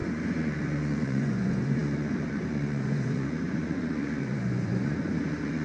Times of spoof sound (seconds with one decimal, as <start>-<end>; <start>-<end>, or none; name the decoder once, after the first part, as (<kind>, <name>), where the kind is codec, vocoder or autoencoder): 0.0-5.6 (vocoder, Vocos)